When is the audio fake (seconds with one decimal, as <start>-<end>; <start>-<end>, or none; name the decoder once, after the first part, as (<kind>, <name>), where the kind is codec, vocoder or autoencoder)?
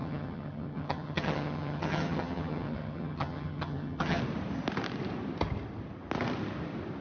0.0-4.2 (vocoder, HiFi-GAN)